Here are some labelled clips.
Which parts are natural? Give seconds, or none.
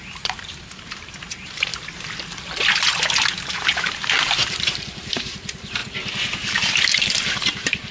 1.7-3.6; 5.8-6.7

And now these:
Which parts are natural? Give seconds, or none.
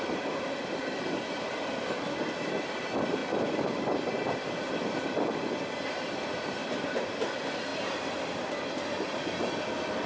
0.0-6.6; 7.3-7.7; 8.8-10.1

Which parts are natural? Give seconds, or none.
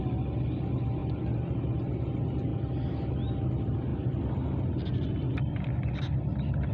0.0-1.0; 1.8-2.5; 3.1-3.9; 5.9-6.7